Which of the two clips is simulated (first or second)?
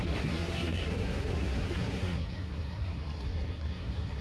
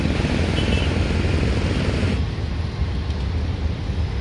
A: first